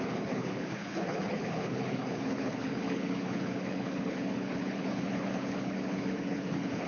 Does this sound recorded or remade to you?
remade